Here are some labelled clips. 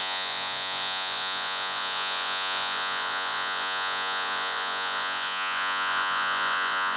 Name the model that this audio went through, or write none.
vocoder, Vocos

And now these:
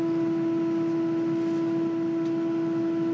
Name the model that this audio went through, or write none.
none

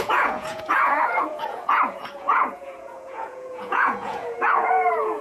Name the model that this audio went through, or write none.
vocoder, Vocos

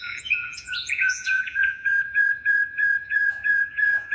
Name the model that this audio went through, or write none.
vocoder, Vocos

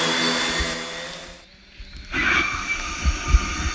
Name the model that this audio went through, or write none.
none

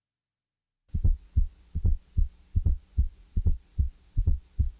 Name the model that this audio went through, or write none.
vocoder, Vocos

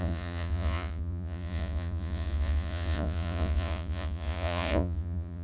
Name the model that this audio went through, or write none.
vocoder, Vocos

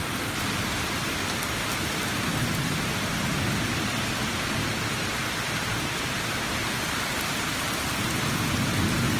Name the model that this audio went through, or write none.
none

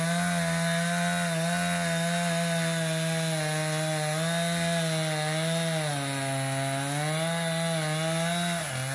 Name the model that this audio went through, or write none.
none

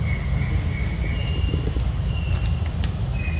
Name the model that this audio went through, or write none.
none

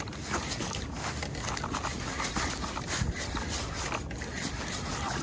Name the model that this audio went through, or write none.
none